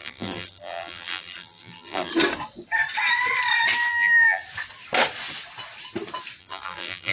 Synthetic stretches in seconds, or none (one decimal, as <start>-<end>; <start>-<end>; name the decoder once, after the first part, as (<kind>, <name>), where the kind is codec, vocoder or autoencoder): 0.0-2.1 (vocoder, BigVGAN v2); 3.9-4.4; 6.4-7.1